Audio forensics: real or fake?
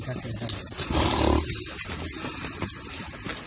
real